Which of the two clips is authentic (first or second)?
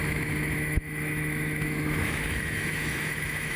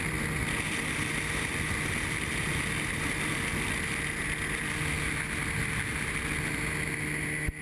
second